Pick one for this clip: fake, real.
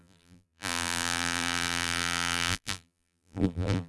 fake